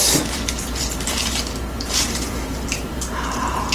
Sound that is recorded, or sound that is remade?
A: remade